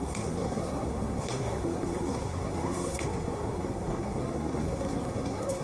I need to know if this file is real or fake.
fake